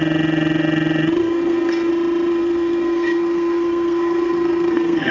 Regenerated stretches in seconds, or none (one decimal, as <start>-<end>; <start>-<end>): 1.2-1.9; 2.3-5.1